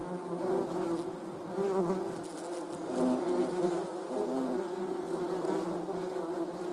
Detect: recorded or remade recorded